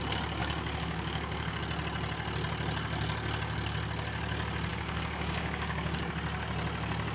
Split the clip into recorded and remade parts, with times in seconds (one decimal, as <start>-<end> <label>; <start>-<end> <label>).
0.0-0.4 recorded; 0.4-1.6 remade; 1.6-4.7 recorded; 4.7-6.1 remade; 6.1-7.1 recorded